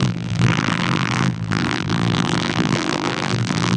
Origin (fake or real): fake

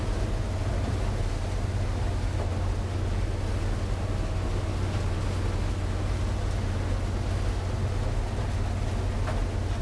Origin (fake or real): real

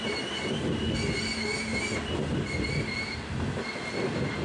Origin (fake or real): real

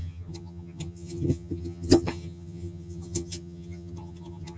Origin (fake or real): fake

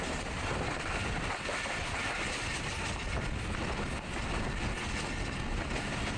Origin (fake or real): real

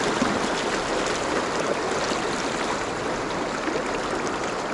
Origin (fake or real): real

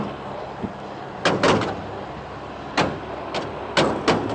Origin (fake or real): real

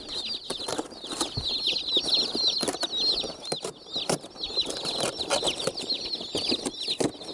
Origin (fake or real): real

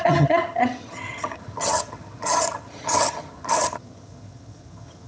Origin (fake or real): fake